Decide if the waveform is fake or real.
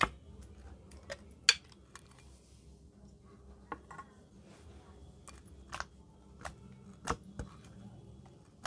real